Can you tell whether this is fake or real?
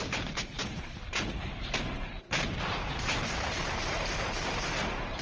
fake